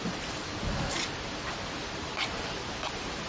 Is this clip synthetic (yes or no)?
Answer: no